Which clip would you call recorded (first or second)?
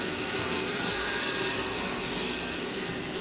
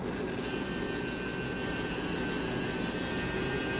second